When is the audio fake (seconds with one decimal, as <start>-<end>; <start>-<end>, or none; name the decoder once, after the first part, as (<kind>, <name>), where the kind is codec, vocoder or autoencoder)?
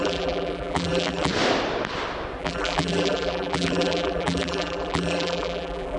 0.0-1.3 (vocoder, BigVGAN v2); 2.4-6.0